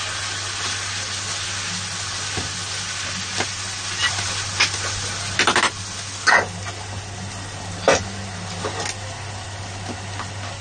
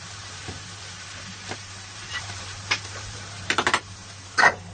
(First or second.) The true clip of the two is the first